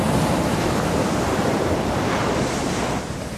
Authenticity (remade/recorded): remade